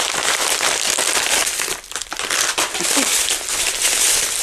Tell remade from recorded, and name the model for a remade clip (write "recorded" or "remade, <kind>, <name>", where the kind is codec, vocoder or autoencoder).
remade, vocoder, BigVGAN v2